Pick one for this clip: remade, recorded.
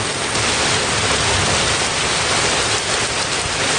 recorded